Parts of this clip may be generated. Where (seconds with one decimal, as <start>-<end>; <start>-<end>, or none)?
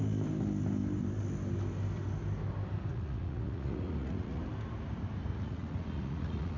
2.9-4.4; 5.3-6.6